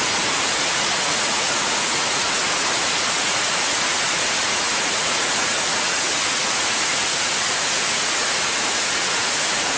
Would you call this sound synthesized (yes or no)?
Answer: yes